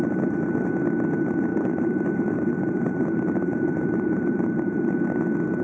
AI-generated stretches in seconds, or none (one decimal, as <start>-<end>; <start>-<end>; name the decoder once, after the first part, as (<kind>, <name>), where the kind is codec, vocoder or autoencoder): 1.5-4.9 (vocoder, BigVGAN v2)